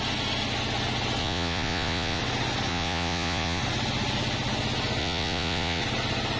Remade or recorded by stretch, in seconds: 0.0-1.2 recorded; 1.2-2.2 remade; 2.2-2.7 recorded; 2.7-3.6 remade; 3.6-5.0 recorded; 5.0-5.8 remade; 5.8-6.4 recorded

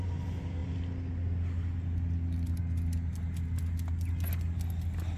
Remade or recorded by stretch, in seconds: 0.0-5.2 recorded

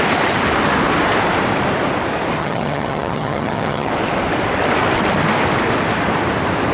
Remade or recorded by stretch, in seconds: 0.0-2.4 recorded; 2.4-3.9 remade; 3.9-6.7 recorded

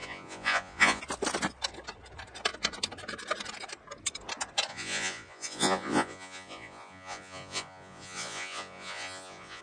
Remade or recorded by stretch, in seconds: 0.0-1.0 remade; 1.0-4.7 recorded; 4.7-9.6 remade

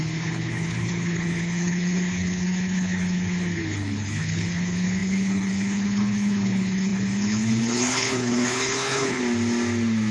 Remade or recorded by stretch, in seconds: 0.0-9.2 remade; 9.2-10.1 recorded